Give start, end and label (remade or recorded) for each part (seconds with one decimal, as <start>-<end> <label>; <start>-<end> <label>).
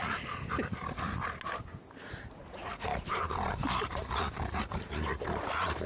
0.0-2.6 recorded; 2.6-4.6 remade; 4.6-5.9 recorded